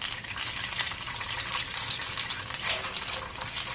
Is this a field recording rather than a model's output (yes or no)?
yes